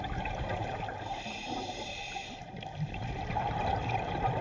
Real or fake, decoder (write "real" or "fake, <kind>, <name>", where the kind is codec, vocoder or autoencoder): fake, vocoder, BigVGAN v2